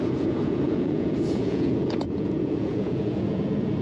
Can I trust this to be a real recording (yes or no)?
no